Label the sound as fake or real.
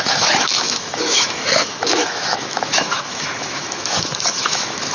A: fake